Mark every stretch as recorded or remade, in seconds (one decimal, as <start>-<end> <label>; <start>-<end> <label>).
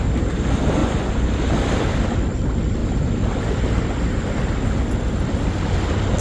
0.0-0.8 recorded; 0.8-1.3 remade; 1.3-6.2 recorded